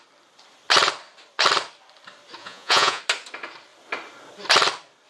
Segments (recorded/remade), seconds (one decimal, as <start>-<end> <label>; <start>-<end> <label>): 0.0-2.4 recorded; 2.4-3.0 remade; 3.0-5.1 recorded

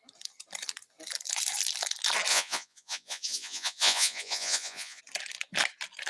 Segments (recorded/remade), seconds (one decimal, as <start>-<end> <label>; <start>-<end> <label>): 0.0-2.3 recorded; 2.3-5.0 remade; 5.0-6.1 recorded

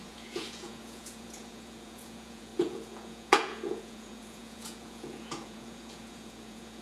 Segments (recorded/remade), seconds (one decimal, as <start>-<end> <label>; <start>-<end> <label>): 0.0-6.8 remade

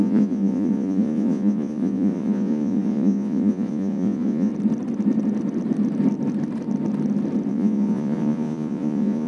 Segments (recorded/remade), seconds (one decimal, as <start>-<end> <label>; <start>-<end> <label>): 0.0-4.5 remade; 4.5-7.5 recorded; 7.5-9.3 remade

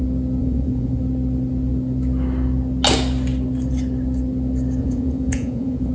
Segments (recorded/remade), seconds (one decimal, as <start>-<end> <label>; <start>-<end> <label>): 0.0-0.4 recorded; 0.4-1.0 remade; 1.0-4.8 recorded; 4.8-5.9 remade